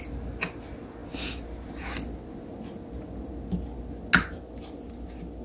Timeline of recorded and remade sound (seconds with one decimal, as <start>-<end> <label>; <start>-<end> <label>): 0.0-5.4 recorded